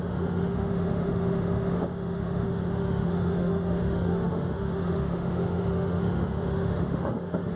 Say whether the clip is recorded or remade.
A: remade